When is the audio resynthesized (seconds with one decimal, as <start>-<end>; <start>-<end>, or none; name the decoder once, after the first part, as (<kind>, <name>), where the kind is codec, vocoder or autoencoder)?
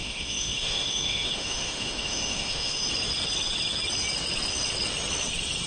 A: 0.0-2.9 (autoencoder, DAC-VAE)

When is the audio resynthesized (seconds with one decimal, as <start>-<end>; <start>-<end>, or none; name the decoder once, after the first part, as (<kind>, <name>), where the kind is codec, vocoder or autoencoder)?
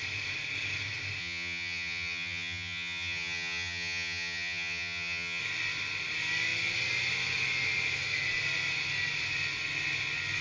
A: 1.2-5.4 (vocoder, HiFi-GAN)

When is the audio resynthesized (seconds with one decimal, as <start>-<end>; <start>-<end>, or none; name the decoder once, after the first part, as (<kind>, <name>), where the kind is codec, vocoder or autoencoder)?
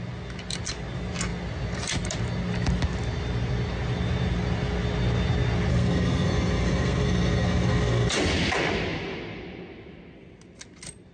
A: 5.7-8.1 (codec, SNAC)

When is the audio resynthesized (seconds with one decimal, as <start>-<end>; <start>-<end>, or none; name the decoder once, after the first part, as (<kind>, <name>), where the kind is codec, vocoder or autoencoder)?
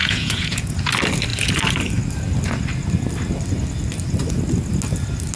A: 0.0-0.7 (vocoder, Vocos)